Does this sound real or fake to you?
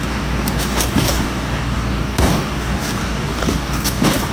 fake